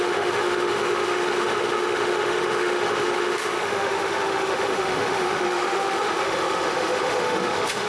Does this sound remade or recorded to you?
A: remade